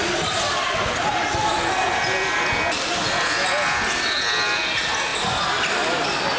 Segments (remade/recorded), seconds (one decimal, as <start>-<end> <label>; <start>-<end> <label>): 0.0-6.4 recorded